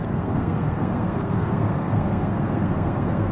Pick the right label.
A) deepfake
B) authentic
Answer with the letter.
A